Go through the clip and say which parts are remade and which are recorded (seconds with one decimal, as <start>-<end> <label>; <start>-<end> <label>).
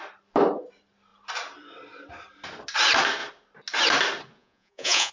0.0-4.4 recorded; 4.4-5.1 remade